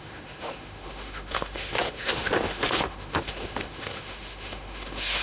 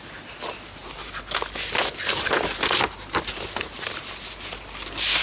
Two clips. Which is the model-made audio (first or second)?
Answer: first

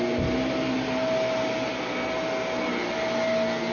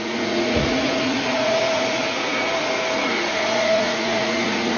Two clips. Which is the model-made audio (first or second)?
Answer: second